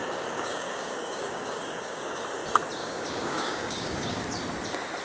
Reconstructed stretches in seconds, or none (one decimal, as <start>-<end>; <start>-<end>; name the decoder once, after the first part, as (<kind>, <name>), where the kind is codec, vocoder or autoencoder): 0.0-2.2 (codec, DAC); 2.8-4.2